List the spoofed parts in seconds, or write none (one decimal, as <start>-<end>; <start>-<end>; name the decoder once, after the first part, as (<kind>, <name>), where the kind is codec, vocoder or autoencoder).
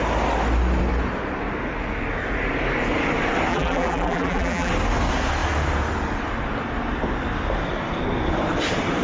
3.5-4.7 (vocoder, BigVGAN v2)